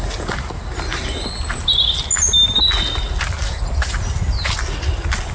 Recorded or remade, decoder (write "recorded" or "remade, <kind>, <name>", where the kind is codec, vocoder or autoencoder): recorded